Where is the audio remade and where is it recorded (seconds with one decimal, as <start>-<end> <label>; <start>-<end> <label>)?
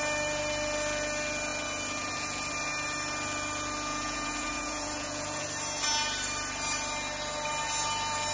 0.0-3.9 recorded; 3.9-5.4 remade; 5.4-8.3 recorded